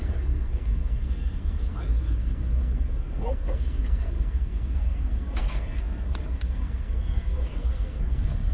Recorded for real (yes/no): no